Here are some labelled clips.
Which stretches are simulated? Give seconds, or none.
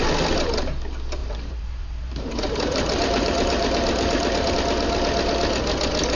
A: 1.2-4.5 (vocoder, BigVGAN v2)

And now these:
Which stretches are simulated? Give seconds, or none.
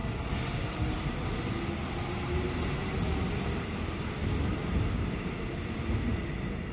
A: none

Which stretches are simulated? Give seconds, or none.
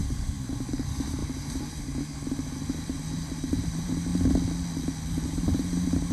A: 0.0-4.1 (vocoder, BigVGAN v2); 5.2-6.1